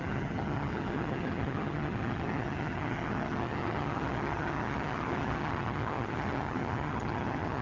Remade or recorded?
remade